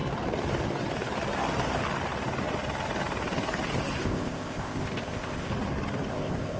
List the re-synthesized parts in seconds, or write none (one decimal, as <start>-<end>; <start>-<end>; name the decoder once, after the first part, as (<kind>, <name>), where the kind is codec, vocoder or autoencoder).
4.0-5.5 (codec, ZipCodec); 6.1-6.6